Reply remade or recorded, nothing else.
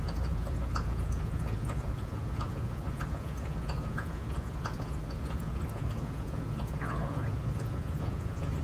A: remade